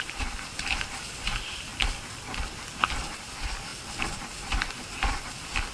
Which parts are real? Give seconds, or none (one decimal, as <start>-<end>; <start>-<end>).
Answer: 1.7-3.1; 3.7-5.7